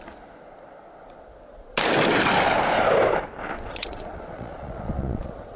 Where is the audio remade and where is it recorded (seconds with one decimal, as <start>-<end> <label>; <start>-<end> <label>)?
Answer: 0.0-3.5 recorded; 3.5-5.6 remade